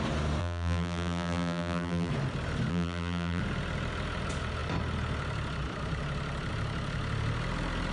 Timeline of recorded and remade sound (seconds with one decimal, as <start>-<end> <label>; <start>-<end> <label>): 0.0-0.4 recorded; 0.4-2.1 remade; 2.1-2.7 recorded; 2.7-3.4 remade; 3.4-7.9 recorded

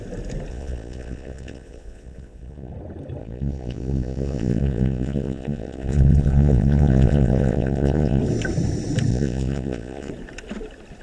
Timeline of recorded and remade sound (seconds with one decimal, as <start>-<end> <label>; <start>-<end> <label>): 0.0-0.5 recorded; 0.5-2.7 remade; 2.7-3.2 recorded; 3.2-8.2 remade; 8.2-9.1 recorded; 9.1-10.1 remade; 10.1-11.0 recorded

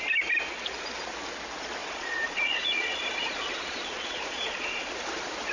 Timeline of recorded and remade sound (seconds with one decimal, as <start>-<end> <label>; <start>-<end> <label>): 0.0-1.8 recorded; 1.8-4.9 remade; 4.9-5.5 recorded

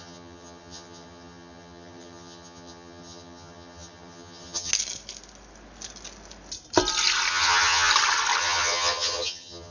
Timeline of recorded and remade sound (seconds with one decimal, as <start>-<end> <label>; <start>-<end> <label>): 0.0-4.7 remade; 4.7-7.3 recorded; 7.3-7.9 remade; 7.9-8.4 recorded; 8.4-9.7 remade

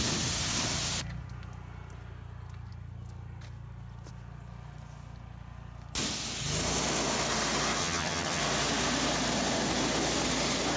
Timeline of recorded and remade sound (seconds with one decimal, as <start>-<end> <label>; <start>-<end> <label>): 0.0-7.8 recorded; 7.8-8.4 remade; 8.4-10.8 recorded

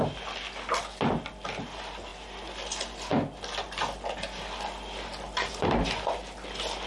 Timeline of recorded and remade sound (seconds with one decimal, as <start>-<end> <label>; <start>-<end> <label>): 0.0-6.9 recorded